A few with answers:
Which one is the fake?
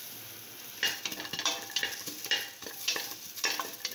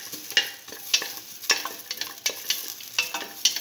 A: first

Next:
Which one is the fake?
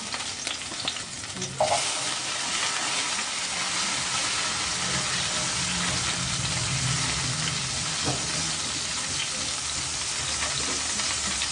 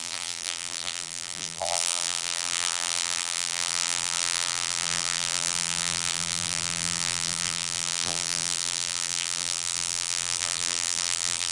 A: second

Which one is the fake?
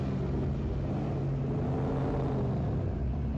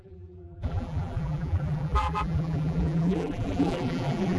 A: second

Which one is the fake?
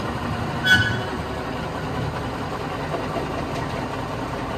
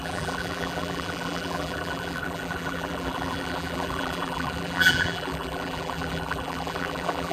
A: second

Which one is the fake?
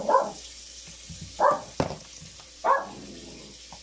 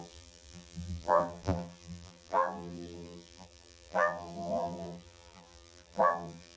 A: second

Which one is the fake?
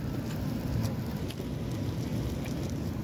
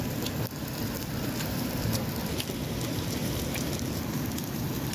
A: second